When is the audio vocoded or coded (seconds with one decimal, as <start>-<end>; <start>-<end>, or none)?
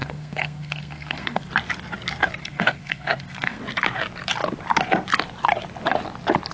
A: 0.0-1.5; 2.4-3.6